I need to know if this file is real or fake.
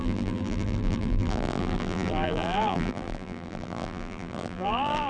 fake